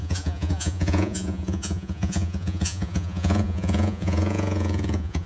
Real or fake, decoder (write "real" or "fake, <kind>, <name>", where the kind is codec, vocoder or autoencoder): fake, vocoder, Vocos